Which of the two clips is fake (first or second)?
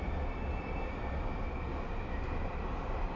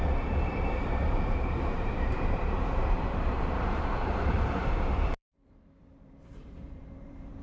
second